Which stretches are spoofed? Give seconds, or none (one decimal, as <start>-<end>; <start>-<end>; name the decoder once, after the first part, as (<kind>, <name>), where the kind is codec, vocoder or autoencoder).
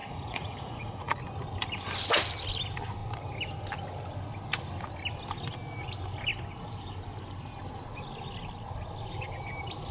0.0-1.2 (vocoder, Vocos)